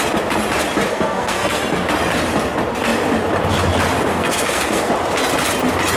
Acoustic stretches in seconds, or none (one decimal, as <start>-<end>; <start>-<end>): 0.0-0.9; 1.6-4.1; 4.9-6.0